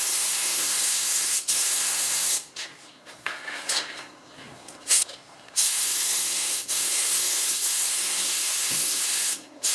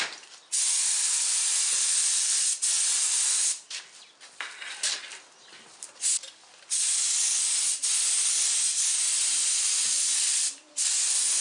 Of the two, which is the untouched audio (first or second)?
second